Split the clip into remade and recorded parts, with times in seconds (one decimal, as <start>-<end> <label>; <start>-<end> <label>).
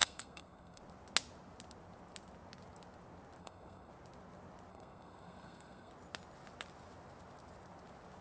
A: 0.0-0.8 remade; 0.8-3.4 recorded; 3.4-3.9 remade; 3.9-4.7 recorded; 4.7-5.9 remade; 5.9-8.2 recorded